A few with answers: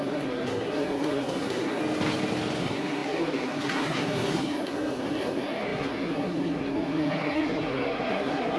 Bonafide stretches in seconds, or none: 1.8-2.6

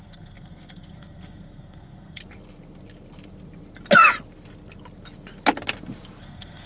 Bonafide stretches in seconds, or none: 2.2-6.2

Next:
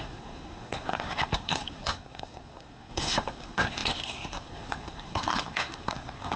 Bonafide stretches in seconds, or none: none